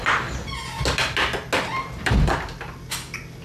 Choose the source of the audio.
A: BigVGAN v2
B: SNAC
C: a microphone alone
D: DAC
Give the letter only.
C